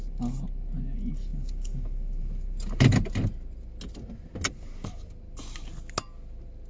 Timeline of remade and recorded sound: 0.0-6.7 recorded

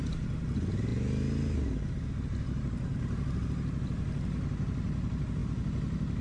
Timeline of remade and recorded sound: 0.0-6.2 recorded

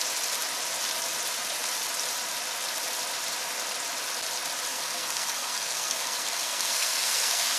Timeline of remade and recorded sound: 0.0-4.7 recorded; 4.7-7.6 remade